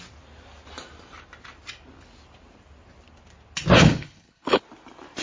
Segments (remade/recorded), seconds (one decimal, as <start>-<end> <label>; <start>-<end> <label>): 0.0-3.8 recorded; 3.8-4.6 remade; 4.6-5.2 recorded